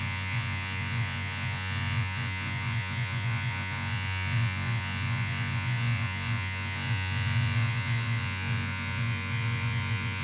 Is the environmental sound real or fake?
fake